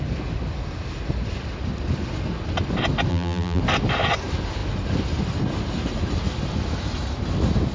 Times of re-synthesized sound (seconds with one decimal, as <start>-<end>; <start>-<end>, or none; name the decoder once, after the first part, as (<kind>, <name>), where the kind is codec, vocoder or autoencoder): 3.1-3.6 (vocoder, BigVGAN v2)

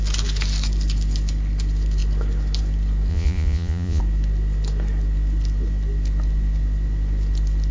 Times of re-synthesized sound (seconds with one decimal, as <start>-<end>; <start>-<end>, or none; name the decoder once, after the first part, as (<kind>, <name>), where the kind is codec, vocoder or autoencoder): 3.1-4.0 (vocoder, Vocos)

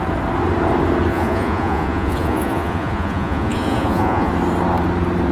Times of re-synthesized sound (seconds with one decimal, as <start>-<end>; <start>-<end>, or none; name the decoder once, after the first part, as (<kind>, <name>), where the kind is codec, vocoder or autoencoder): 1.1-4.3 (vocoder, Vocos)

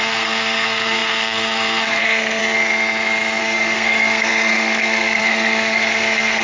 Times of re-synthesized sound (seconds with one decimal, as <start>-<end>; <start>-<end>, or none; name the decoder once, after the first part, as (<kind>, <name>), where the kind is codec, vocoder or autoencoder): 0.0-2.4 (codec, SNAC); 3.4-6.4